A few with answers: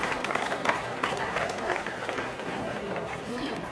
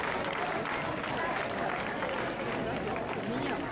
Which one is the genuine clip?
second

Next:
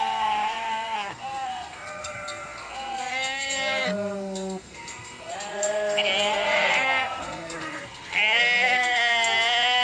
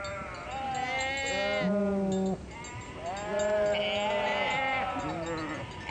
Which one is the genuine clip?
second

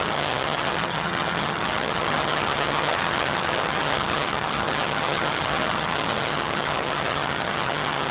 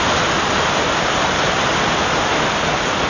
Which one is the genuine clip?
second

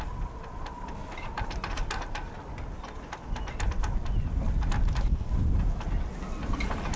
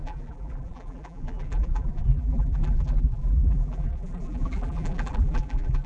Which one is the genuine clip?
first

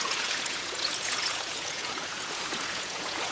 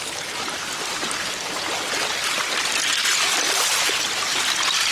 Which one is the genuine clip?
second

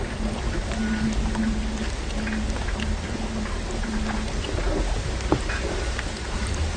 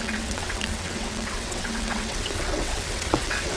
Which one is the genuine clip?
first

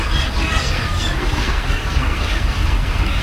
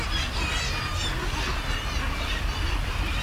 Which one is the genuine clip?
second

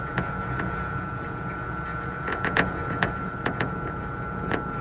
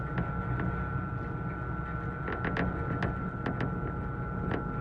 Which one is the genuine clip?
second